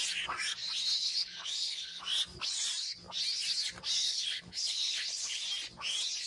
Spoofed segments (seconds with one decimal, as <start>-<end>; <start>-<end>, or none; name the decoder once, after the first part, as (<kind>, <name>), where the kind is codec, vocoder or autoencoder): 1.0-2.0 (codec, HILCodec); 4.0-5.4